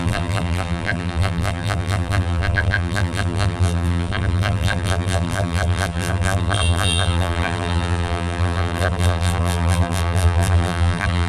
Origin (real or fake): fake